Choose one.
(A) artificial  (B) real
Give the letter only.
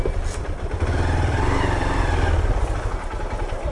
B